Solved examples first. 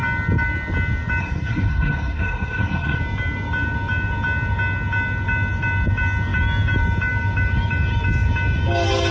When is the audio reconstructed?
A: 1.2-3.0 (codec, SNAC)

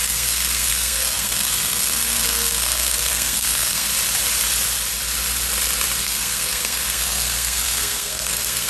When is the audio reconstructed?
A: 0.0-3.9 (codec, SNAC); 6.0-8.7

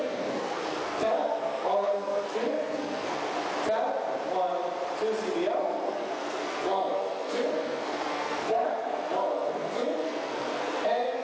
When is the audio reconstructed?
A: 0.0-3.2 (codec, SNAC); 5.6-11.2

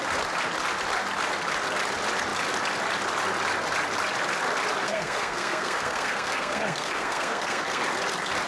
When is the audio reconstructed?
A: 4.8-7.8 (codec, SNAC)